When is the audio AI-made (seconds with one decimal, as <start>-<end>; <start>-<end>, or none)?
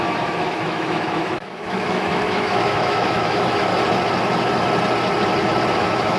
0.0-3.7; 5.7-6.2